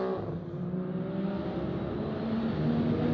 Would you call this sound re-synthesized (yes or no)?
no